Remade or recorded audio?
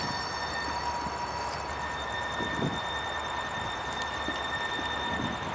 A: recorded